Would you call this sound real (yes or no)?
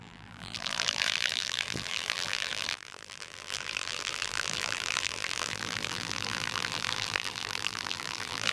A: no